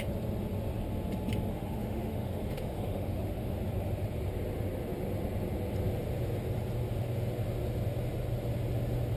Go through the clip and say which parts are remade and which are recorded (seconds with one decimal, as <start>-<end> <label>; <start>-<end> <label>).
0.0-1.5 recorded; 1.5-3.6 remade; 3.6-9.2 recorded